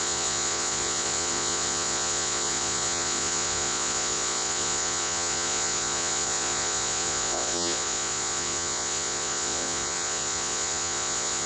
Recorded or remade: remade